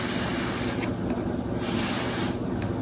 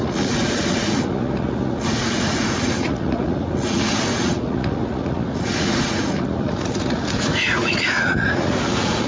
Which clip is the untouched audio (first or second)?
first